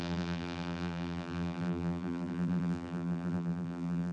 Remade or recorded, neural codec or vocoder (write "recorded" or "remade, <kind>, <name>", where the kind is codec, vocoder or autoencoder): remade, vocoder, BigVGAN v2